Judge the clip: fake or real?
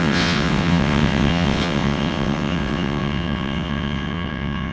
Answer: fake